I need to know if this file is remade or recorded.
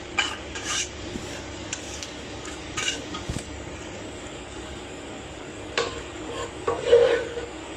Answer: remade